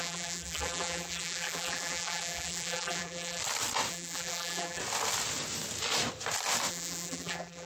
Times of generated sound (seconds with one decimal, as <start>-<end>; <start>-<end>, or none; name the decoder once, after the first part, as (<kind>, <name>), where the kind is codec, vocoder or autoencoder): 0.0-3.4 (vocoder, BigVGAN v2); 3.9-4.8; 6.7-7.7